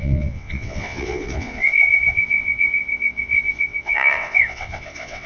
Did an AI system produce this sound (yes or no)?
yes